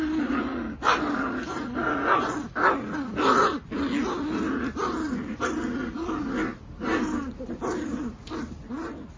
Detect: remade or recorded recorded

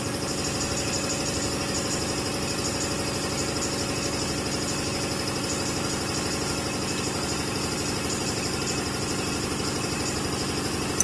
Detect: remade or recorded recorded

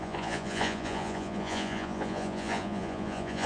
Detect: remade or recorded remade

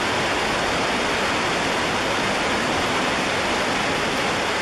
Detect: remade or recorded recorded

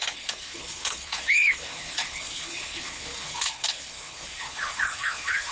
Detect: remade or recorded remade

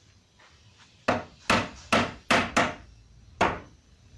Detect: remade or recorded recorded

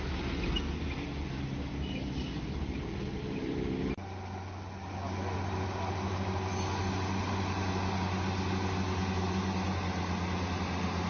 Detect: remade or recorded recorded